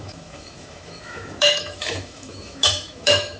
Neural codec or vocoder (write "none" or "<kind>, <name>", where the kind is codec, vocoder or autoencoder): autoencoder, DAC-VAE